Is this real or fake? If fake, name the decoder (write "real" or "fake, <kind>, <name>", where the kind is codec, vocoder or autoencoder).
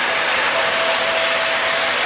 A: real